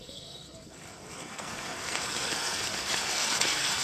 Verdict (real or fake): fake